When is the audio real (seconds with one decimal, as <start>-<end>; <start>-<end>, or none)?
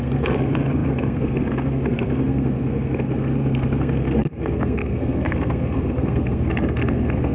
none